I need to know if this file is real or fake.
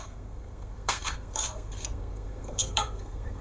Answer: fake